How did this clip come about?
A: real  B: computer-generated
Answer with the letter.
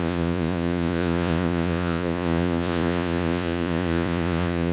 B